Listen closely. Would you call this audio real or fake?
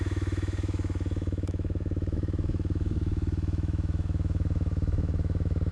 fake